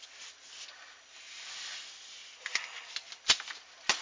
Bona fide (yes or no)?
yes